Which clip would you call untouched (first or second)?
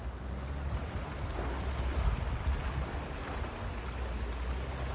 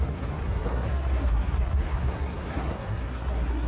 first